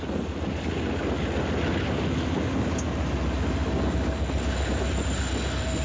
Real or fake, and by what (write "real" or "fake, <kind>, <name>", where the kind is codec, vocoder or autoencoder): real